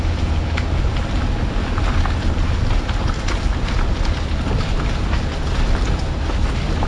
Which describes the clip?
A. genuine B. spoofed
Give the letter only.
A